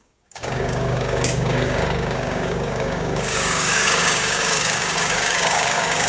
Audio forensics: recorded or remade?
remade